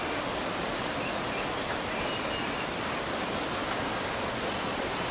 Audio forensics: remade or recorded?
recorded